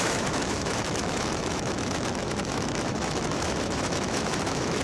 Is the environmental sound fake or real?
fake